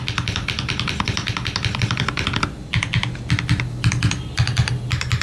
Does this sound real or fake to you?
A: fake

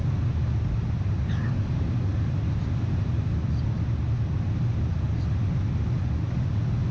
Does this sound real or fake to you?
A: real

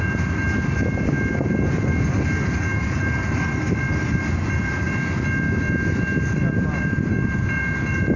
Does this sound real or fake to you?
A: real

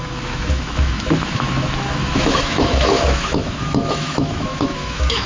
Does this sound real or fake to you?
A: fake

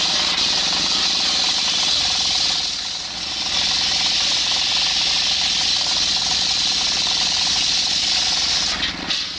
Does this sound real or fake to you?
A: real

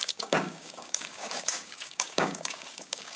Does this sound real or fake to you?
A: fake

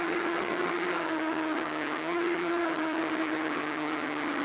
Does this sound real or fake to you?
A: fake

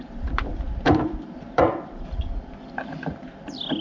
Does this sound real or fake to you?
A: fake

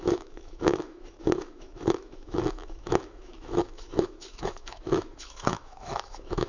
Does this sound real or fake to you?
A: fake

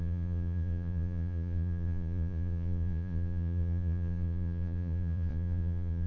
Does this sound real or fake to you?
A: fake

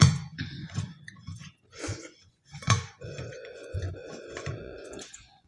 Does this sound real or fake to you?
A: fake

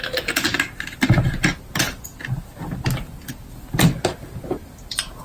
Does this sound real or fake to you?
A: real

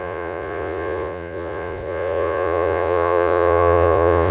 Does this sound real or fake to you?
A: fake